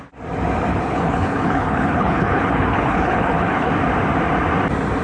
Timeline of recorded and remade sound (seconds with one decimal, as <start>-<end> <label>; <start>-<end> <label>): 0.0-0.7 recorded; 0.7-3.7 remade; 3.7-5.0 recorded

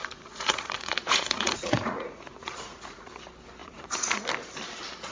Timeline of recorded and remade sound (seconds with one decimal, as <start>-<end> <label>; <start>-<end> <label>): 0.0-3.1 remade; 3.1-3.6 recorded; 3.6-4.2 remade; 4.2-5.1 recorded

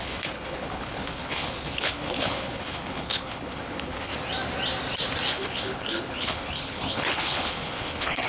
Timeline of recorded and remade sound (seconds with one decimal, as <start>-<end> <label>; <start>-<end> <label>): 0.0-4.1 remade; 4.1-5.3 recorded; 5.3-8.3 remade

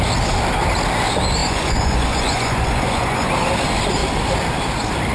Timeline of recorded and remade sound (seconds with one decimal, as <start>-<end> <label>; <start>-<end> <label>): 0.0-1.4 recorded; 1.4-3.3 remade; 3.3-5.1 recorded

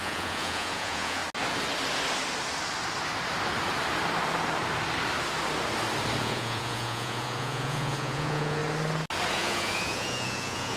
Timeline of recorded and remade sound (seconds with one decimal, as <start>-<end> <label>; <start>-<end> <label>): 0.0-1.2 remade; 1.2-6.2 recorded; 6.2-8.6 remade; 8.6-9.3 recorded; 9.3-10.8 remade

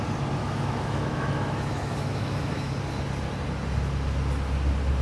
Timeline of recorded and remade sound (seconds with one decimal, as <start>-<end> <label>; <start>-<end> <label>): 0.0-0.4 recorded; 0.4-2.7 remade; 2.7-5.0 recorded

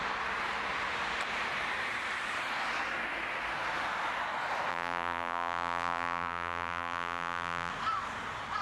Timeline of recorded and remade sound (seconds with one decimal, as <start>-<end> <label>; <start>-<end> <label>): 0.0-4.7 recorded; 4.7-7.7 remade; 7.7-8.6 recorded

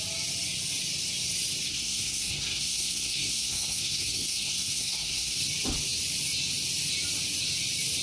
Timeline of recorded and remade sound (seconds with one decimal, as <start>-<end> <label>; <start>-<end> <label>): 0.0-1.7 recorded; 1.7-5.4 remade; 5.4-8.0 recorded